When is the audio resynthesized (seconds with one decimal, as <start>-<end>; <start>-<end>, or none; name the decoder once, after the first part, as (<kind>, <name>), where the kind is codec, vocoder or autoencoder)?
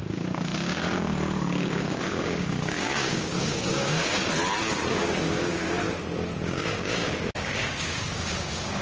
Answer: 0.0-4.2 (codec, DAC); 4.9-5.8; 6.4-8.8